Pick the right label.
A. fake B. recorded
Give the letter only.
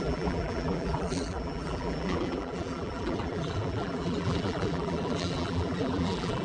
A